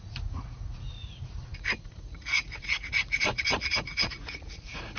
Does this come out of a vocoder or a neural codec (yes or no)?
yes